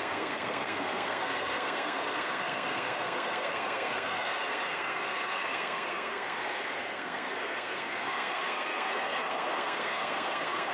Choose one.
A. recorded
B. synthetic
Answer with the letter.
B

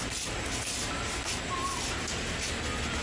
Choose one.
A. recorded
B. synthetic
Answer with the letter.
A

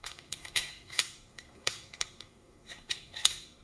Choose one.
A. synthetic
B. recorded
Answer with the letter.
A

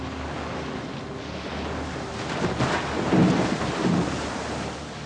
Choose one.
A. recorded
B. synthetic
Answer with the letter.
A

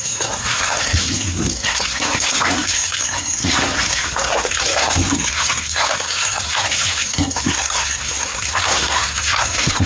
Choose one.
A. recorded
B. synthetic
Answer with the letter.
B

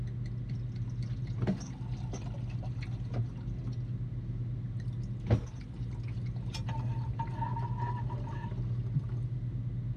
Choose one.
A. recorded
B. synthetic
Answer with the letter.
A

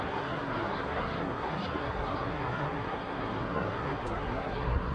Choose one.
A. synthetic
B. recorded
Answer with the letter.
A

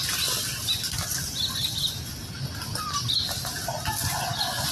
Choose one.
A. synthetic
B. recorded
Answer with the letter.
B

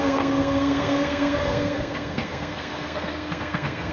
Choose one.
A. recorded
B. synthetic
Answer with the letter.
B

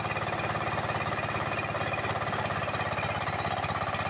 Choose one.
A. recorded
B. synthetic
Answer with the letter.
A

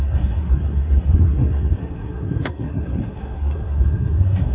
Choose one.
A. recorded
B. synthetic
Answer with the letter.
B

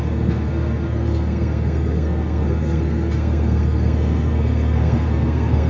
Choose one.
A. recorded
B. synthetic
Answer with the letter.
B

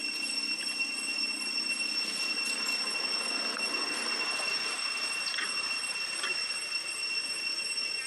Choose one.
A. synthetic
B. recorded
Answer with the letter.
B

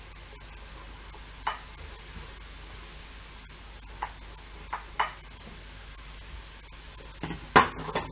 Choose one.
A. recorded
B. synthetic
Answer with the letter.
A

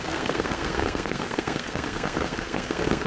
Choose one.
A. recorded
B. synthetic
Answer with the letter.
B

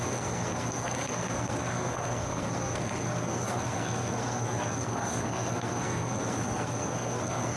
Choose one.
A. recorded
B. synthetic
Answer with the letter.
B